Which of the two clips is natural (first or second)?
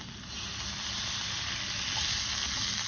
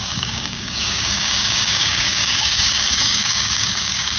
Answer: first